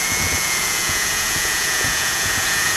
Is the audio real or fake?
fake